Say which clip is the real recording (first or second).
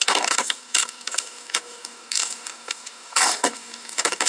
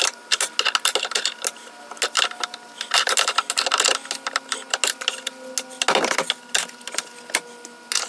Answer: second